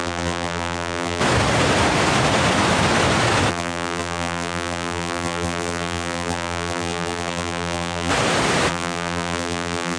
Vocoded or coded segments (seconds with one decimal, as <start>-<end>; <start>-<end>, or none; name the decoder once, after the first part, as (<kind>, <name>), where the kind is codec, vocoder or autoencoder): 0.0-1.2 (vocoder, BigVGAN v2); 3.5-8.1; 8.7-10.0